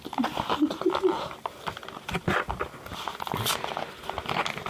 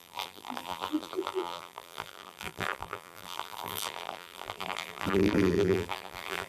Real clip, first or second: first